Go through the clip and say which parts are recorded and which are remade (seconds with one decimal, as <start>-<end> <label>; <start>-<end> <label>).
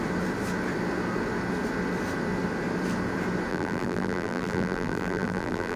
0.0-3.5 recorded; 3.5-5.8 remade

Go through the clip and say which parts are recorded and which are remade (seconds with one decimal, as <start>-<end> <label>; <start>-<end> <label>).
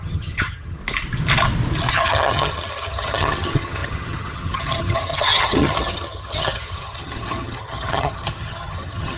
0.0-0.8 remade; 0.8-1.9 recorded; 1.9-9.2 remade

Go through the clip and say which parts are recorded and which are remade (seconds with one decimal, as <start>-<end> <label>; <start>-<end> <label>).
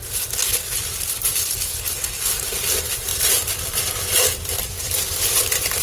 0.0-3.1 recorded; 3.1-5.0 remade; 5.0-5.8 recorded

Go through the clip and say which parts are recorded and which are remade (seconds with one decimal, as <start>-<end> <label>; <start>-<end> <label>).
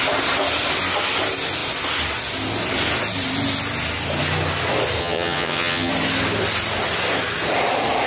0.0-5.0 recorded; 5.0-5.9 remade; 5.9-8.1 recorded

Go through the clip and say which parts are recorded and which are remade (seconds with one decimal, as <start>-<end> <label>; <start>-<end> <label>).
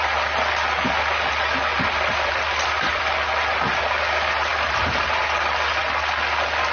0.0-1.7 recorded; 1.7-3.0 remade; 3.0-4.5 recorded; 4.5-5.2 remade; 5.2-6.7 recorded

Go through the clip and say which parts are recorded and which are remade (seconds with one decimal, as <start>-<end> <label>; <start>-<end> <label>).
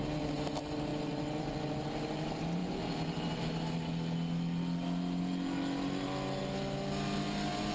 0.0-7.7 recorded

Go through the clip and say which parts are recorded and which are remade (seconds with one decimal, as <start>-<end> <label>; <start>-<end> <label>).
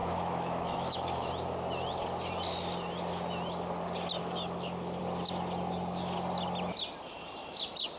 0.0-1.3 remade; 1.3-4.2 recorded; 4.2-5.0 remade; 5.0-8.0 recorded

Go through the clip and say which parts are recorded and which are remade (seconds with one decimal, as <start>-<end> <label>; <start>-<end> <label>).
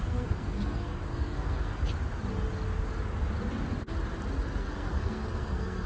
0.0-1.7 remade; 1.7-4.6 recorded; 4.6-5.9 remade